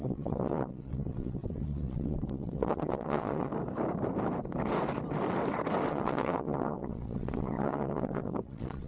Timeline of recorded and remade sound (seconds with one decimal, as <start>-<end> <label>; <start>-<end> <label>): 0.0-3.5 remade; 3.5-5.9 recorded; 5.9-8.9 remade